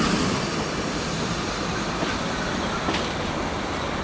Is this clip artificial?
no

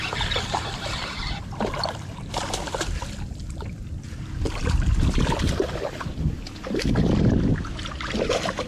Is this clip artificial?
yes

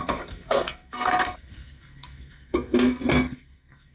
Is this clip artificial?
yes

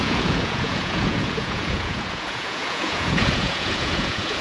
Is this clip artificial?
yes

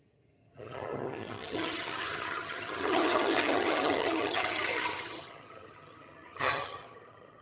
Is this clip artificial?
yes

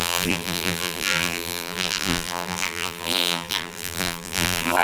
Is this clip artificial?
yes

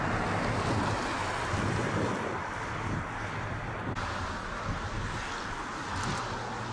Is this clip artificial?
no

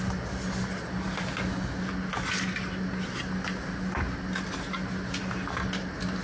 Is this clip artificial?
no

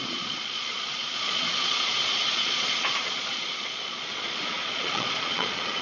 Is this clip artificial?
yes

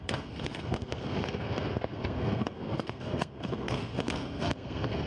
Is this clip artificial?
yes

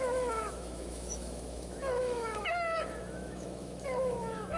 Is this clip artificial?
yes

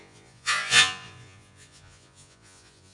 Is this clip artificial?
yes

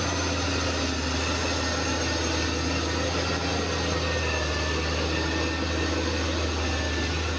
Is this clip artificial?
no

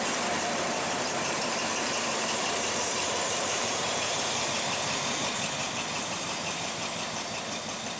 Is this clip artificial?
yes